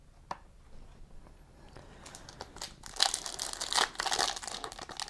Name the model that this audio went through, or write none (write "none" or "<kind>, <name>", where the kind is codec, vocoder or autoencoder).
none